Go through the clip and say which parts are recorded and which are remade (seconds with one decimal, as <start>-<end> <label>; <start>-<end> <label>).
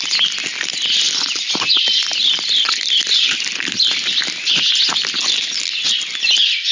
0.0-6.7 recorded